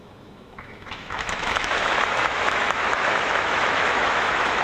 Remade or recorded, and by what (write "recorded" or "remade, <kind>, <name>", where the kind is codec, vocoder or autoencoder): remade, autoencoder, DAC-VAE